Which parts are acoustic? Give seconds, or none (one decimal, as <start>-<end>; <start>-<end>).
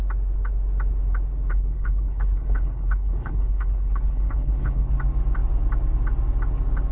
0.0-1.5; 4.9-6.9